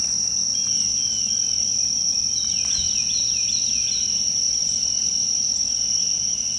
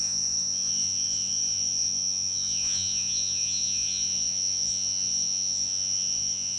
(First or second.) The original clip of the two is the first